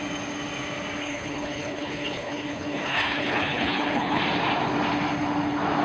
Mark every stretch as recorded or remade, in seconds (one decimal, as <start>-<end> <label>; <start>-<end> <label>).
0.0-1.0 recorded; 1.0-4.2 remade; 4.2-5.8 recorded